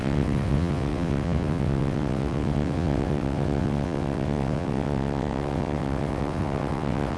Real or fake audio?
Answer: fake